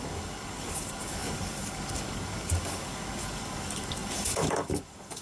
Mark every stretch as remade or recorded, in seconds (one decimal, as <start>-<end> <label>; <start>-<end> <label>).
0.0-5.2 remade